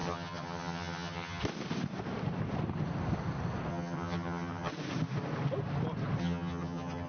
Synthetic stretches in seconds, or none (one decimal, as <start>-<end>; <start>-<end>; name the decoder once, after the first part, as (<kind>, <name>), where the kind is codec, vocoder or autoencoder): 0.0-1.4 (vocoder, HiFi-GAN); 3.7-4.7; 6.2-7.1